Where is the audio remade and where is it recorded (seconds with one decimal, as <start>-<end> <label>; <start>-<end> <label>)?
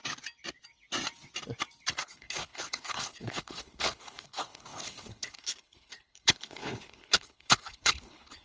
0.0-2.0 recorded; 2.0-8.4 remade